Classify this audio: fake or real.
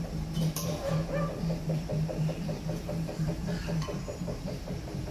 fake